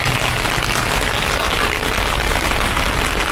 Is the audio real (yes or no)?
yes